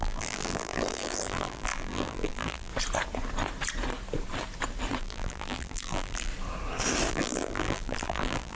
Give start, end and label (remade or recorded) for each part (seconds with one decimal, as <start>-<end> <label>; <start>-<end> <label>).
0.0-2.7 remade; 2.7-5.0 recorded; 5.0-6.3 remade; 6.3-7.1 recorded; 7.1-8.6 remade